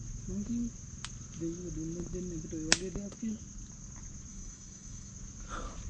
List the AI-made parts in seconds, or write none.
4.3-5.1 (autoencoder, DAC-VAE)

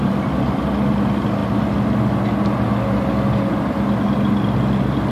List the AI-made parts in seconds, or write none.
none